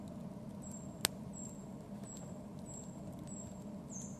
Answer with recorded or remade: recorded